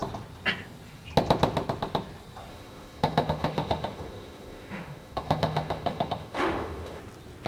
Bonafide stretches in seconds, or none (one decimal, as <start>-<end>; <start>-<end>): 0.0-2.5; 7.0-7.5